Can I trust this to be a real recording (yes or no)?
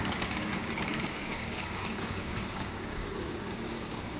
no